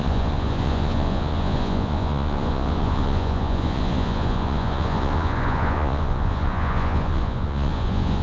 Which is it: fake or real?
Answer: fake